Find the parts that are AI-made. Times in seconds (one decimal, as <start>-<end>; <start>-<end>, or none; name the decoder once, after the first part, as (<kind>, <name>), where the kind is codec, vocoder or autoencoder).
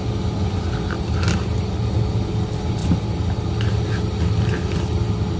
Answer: none